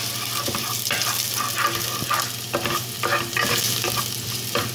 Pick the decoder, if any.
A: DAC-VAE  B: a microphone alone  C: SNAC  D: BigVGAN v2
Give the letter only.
B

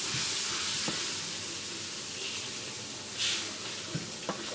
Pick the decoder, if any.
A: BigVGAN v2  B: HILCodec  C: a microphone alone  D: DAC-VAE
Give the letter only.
C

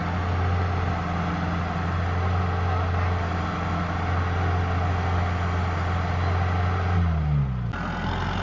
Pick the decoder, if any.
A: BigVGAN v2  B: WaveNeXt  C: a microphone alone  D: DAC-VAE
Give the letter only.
C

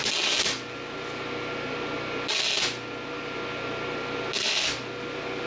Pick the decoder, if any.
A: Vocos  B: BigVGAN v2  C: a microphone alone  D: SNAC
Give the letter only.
C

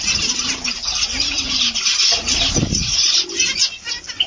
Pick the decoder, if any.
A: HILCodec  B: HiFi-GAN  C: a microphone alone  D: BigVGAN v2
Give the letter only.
C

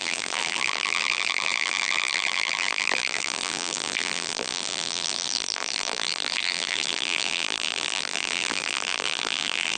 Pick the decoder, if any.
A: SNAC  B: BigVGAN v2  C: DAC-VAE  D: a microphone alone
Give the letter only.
B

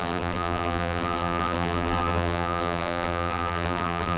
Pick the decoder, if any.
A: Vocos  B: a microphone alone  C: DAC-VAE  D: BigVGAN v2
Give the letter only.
D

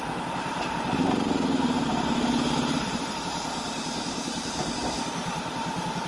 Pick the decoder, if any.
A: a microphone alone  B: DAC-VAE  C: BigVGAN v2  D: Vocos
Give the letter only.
C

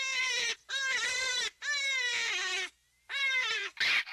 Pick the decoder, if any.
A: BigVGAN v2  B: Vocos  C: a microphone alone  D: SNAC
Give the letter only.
A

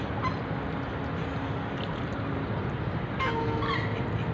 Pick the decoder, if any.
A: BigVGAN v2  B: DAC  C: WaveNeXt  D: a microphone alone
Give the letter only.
D